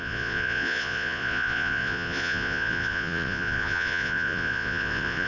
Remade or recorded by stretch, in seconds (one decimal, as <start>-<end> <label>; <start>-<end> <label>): 0.0-5.3 remade